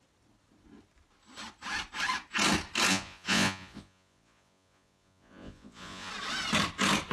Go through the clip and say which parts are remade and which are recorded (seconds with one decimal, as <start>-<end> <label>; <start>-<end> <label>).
0.0-2.9 recorded; 2.9-6.1 remade; 6.1-7.1 recorded